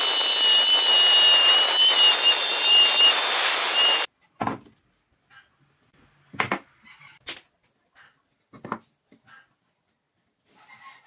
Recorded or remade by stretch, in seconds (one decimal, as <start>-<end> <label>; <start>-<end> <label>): 0.0-11.1 recorded